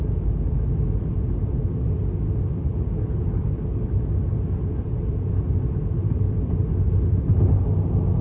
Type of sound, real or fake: real